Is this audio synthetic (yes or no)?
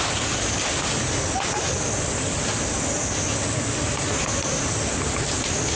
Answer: no